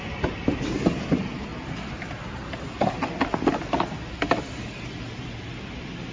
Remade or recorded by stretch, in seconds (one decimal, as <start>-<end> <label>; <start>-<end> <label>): 0.0-6.1 recorded